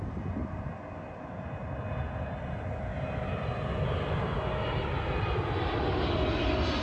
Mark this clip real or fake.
real